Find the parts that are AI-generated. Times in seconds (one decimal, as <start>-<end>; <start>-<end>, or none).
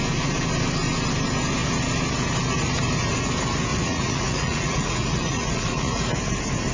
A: 3.7-6.2